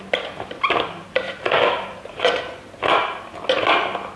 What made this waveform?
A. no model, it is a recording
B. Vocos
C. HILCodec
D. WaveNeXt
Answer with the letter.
A